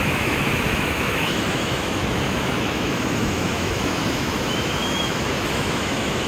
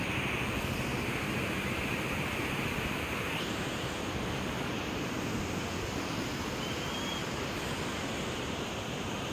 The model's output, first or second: first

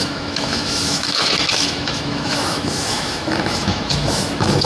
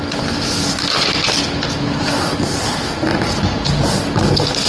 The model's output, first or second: first